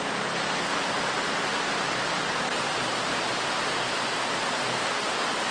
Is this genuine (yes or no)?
yes